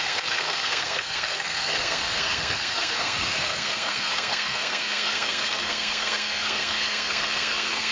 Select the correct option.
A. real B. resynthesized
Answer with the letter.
B